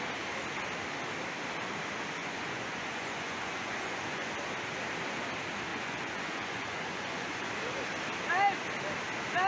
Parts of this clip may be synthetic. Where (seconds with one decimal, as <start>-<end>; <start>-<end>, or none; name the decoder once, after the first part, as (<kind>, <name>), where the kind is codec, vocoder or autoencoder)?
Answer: 2.2-4.3 (vocoder, Vocos); 5.7-7.5